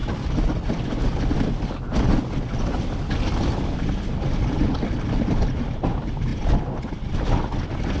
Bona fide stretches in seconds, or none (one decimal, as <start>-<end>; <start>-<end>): 0.0-8.0